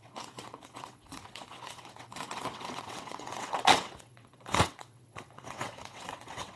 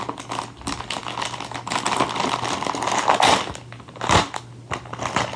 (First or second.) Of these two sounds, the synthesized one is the first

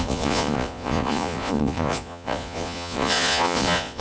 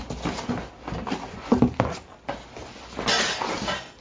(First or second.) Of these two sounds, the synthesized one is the first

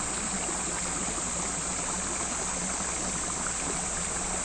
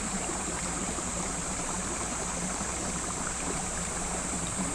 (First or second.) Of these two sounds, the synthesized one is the second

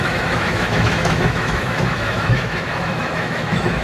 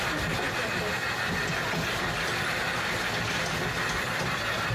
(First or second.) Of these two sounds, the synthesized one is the first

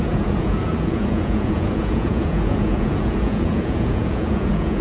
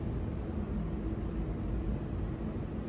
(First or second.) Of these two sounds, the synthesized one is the first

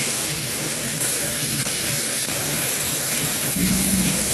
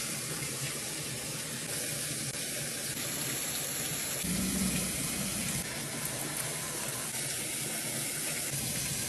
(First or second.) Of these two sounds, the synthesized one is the first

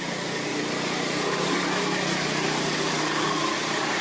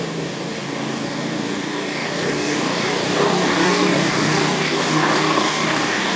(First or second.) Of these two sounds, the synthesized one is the second